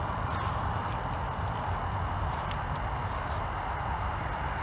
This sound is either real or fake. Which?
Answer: real